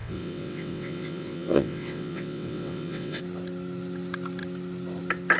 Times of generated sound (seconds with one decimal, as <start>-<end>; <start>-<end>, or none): 0.0-3.2